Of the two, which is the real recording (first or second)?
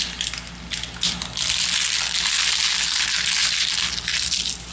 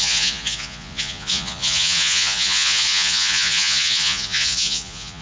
first